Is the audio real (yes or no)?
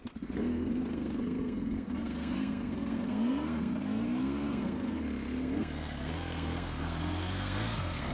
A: no